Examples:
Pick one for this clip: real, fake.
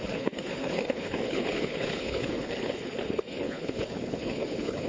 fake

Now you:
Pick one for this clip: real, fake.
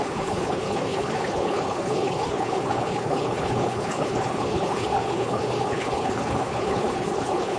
fake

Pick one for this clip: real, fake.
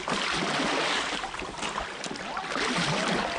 real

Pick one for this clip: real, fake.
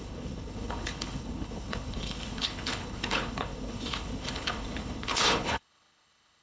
fake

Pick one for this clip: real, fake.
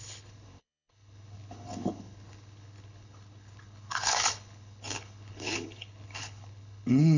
fake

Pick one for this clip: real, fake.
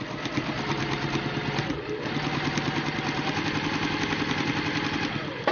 real